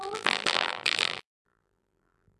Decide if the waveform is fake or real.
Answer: fake